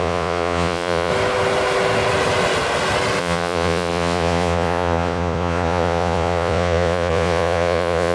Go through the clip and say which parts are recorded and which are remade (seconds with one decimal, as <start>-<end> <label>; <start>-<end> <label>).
0.0-1.1 remade; 1.1-3.2 recorded; 3.2-8.1 remade